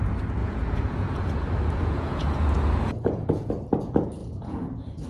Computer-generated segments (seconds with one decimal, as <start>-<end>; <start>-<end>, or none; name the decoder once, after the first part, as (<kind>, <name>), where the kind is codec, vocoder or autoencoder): 0.4-3.5 (vocoder, Vocos); 4.2-5.1